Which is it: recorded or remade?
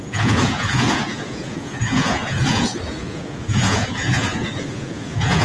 remade